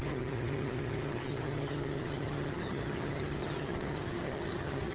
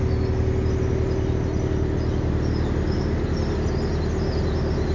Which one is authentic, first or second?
second